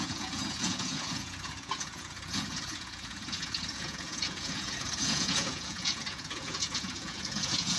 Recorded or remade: remade